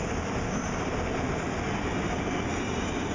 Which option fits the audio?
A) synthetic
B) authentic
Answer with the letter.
B